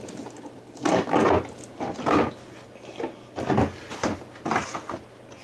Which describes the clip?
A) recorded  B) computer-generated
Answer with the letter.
A